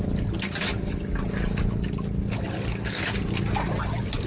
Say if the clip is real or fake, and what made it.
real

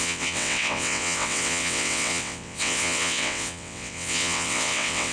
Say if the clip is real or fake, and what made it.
fake, vocoder, WaveNeXt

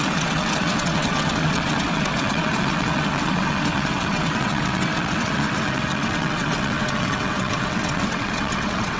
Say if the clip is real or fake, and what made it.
fake, vocoder, WaveNeXt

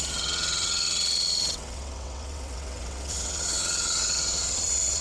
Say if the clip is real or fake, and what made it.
fake, vocoder, WaveNeXt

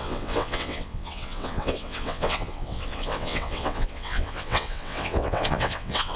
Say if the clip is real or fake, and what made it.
fake, vocoder, WaveNeXt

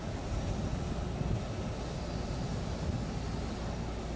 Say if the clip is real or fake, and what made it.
real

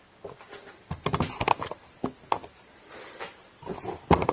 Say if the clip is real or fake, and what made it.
real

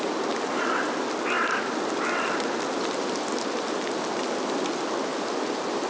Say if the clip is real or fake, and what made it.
real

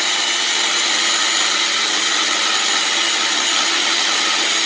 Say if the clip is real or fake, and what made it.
real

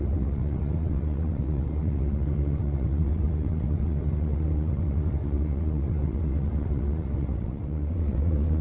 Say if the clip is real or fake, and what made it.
fake, vocoder, WaveNeXt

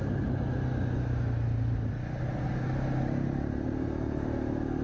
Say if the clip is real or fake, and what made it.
real